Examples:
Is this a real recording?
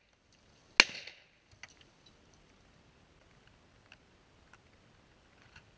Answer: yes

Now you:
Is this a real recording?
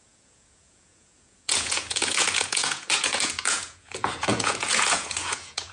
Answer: no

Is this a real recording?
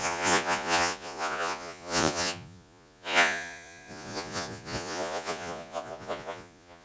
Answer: no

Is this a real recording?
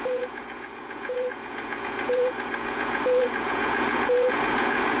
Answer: no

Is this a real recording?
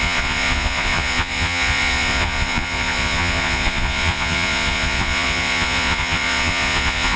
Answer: no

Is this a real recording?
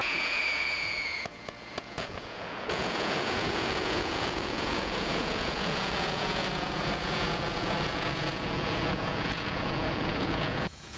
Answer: no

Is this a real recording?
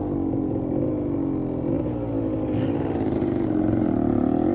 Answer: yes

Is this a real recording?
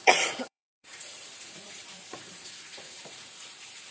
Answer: no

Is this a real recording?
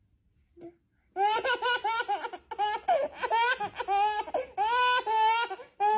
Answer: yes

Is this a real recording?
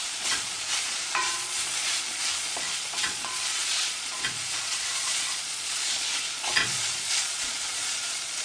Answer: no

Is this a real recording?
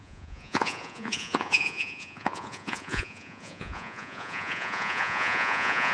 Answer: no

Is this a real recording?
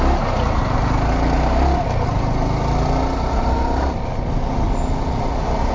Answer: yes